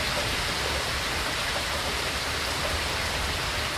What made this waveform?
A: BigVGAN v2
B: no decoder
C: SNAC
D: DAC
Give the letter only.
B